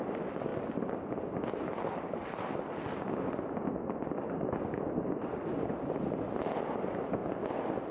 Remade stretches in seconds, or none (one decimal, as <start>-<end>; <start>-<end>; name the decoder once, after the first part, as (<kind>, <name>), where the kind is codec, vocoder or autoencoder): none